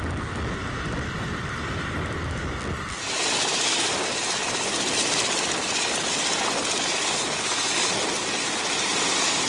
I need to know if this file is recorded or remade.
recorded